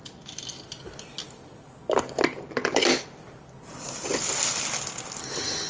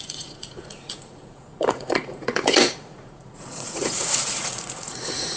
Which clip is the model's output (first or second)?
second